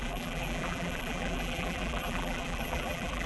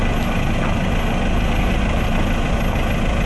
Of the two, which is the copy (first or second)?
first